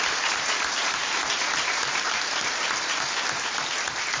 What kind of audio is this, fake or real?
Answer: fake